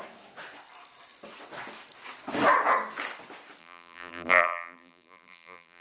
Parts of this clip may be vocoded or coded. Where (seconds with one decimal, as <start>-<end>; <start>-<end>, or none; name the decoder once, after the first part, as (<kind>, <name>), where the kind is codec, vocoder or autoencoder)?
3.6-5.8 (vocoder, BigVGAN v2)